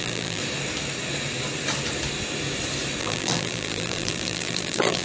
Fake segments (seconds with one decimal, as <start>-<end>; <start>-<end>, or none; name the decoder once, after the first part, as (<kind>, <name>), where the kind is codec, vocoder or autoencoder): 0.0-0.4 (vocoder, BigVGAN v2); 3.0-5.0